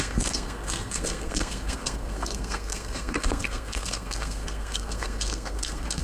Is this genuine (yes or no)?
no